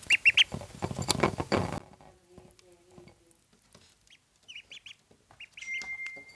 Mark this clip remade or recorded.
recorded